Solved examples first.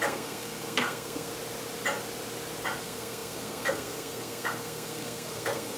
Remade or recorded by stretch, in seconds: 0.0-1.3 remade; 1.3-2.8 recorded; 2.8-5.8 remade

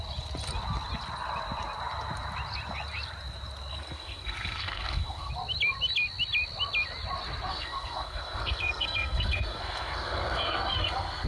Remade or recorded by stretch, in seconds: 0.0-3.7 recorded; 3.7-5.3 remade; 5.3-7.5 recorded; 7.5-11.3 remade

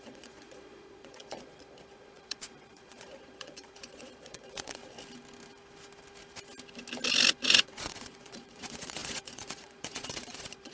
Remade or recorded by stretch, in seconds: 0.0-4.8 remade; 4.8-7.4 recorded; 7.4-10.7 remade